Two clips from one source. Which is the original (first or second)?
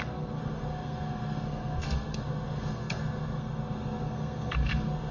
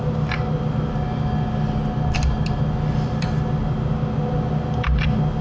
second